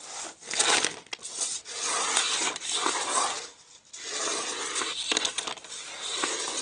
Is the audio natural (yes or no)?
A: yes